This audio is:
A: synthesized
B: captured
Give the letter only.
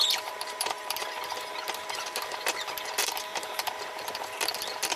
A